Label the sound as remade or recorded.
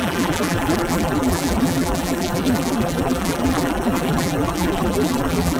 remade